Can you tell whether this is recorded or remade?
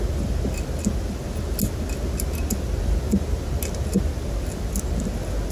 recorded